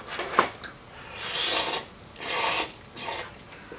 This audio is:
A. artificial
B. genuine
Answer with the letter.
B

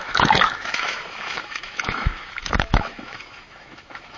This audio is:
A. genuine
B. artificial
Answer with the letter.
B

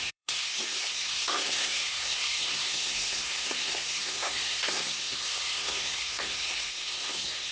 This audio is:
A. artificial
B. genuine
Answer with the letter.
A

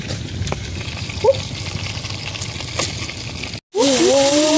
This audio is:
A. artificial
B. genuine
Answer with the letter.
B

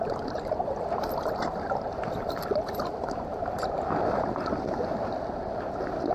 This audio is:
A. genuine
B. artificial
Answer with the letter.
A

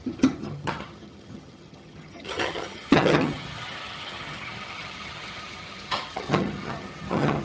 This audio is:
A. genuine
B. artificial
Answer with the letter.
B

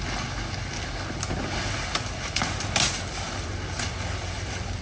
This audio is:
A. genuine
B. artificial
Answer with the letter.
A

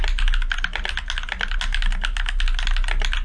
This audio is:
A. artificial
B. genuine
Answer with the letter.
B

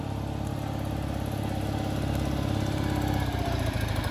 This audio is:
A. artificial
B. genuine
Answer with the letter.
B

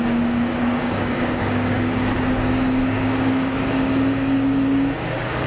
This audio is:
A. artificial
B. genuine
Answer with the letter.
A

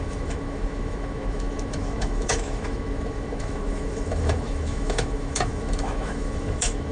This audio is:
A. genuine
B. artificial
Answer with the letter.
B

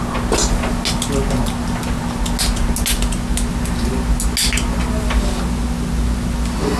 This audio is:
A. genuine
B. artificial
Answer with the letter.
A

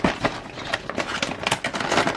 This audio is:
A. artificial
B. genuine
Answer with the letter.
B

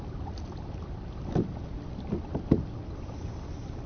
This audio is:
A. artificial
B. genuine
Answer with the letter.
B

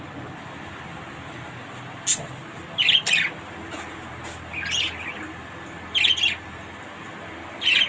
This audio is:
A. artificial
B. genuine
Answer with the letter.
B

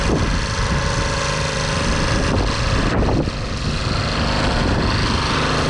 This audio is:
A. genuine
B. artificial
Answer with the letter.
A